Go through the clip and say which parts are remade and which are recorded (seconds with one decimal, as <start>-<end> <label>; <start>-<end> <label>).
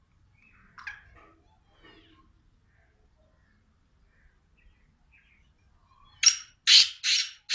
0.0-7.5 recorded